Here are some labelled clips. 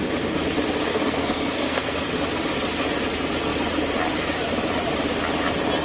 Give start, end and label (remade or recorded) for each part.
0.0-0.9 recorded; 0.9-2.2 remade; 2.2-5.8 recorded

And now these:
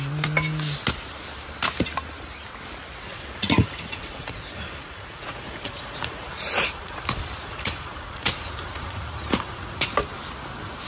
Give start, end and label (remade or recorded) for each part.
0.0-3.1 recorded; 3.1-7.0 remade; 7.0-7.4 recorded; 7.4-9.8 remade; 9.8-10.9 recorded

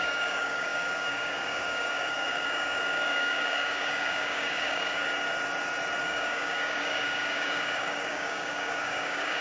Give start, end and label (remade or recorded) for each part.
0.0-5.0 remade; 5.0-6.0 recorded; 6.0-9.4 remade

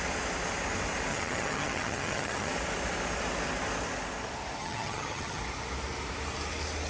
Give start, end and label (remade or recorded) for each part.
0.0-1.1 recorded; 1.1-2.5 remade; 2.5-4.6 recorded; 4.6-5.4 remade; 5.4-6.9 recorded

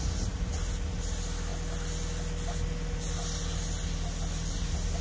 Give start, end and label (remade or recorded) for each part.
0.0-5.0 recorded

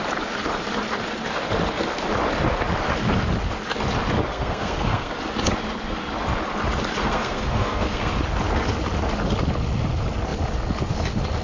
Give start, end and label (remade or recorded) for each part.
0.0-4.3 recorded; 4.3-5.1 remade; 5.1-7.0 recorded; 7.0-8.1 remade; 8.1-11.4 recorded

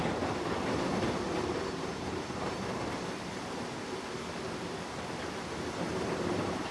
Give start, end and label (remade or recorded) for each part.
0.0-1.9 recorded; 1.9-2.6 remade; 2.6-6.7 recorded

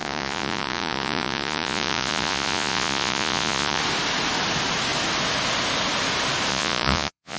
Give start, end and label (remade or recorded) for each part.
0.0-3.8 remade; 3.8-6.5 recorded; 6.5-7.4 remade